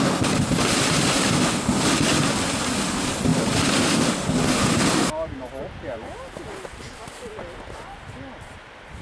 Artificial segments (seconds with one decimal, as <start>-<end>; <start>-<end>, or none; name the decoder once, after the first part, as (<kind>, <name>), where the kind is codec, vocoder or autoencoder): none